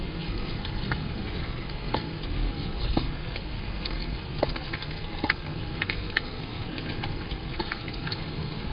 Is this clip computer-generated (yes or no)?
yes